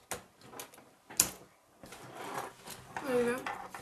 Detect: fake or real real